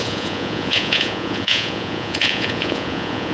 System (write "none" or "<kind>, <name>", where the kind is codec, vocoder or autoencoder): vocoder, Vocos